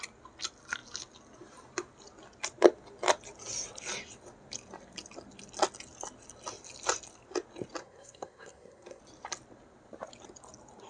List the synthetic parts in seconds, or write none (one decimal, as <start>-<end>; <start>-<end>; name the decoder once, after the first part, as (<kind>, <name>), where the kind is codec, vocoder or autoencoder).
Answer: 7.8-9.0 (codec, SNAC)